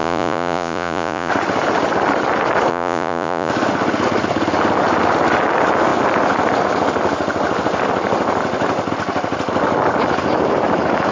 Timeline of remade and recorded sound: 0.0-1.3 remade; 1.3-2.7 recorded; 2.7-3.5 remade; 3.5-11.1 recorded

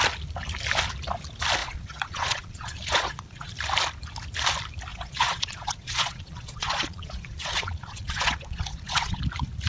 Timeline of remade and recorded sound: 0.0-1.6 recorded; 1.6-3.5 remade; 3.5-4.9 recorded; 4.9-9.2 remade; 9.2-9.7 recorded

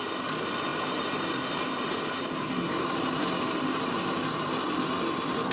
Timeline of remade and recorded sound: 0.0-5.5 recorded